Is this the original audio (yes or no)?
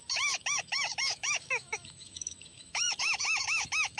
no